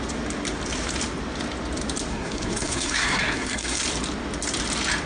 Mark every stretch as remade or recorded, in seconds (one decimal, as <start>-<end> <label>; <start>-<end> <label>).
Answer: 0.0-2.1 recorded; 2.1-3.8 remade; 3.8-5.1 recorded